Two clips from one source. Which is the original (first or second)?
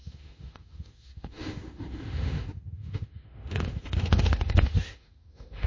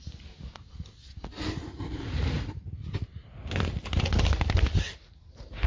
second